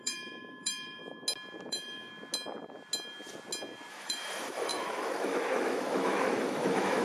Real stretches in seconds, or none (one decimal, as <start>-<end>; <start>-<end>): 1.0-1.7; 2.1-3.9

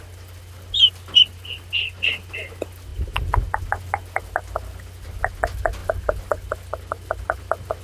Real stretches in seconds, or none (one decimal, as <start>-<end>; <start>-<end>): 0.0-7.8